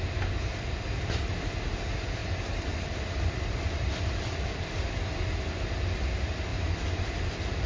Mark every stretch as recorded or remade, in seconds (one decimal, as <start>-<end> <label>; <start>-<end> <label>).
0.0-2.2 recorded; 2.2-4.9 remade; 4.9-6.5 recorded; 6.5-7.3 remade; 7.3-7.7 recorded